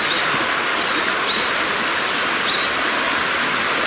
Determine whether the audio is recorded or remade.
recorded